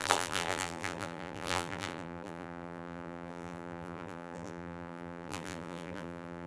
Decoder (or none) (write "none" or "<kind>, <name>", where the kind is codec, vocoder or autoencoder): vocoder, BigVGAN v2